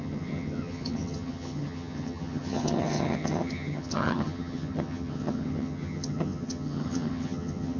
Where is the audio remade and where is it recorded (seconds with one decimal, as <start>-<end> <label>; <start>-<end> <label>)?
0.0-7.8 remade